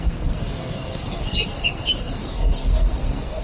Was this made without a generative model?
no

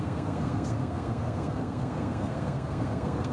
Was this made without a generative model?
no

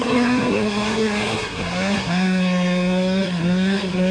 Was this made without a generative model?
no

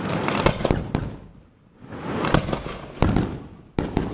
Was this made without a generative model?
yes